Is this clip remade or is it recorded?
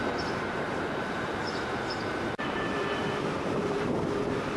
remade